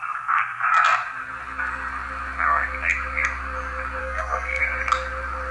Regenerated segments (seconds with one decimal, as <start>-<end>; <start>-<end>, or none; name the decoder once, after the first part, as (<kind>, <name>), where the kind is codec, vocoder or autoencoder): 0.0-0.7 (codec, SNAC); 4.0-4.6